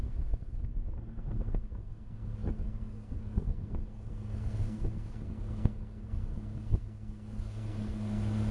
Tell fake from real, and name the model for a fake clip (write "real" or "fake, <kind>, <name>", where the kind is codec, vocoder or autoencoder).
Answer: fake, codec, SNAC